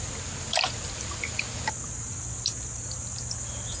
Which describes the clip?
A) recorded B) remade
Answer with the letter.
A